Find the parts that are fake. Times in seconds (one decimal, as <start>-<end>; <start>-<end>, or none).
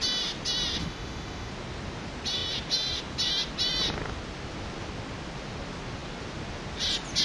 0.8-1.5